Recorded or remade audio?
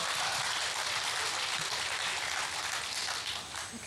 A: recorded